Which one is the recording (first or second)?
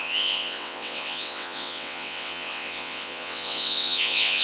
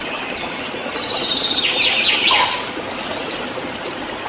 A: second